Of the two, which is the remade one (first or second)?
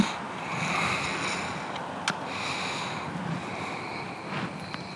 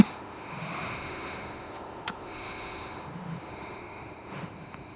second